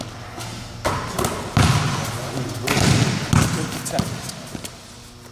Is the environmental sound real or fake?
real